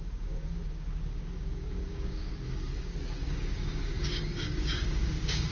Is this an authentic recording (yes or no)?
no